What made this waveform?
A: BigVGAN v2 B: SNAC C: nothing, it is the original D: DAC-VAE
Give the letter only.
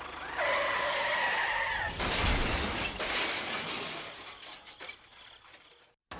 C